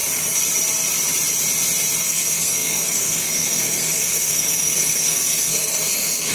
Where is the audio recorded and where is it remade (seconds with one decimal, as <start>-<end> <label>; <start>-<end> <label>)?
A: 0.0-2.0 recorded; 2.0-6.3 remade